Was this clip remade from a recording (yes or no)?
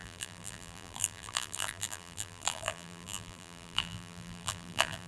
yes